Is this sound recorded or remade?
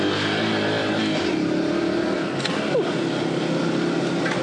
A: recorded